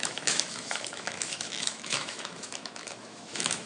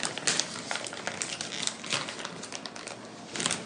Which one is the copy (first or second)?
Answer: first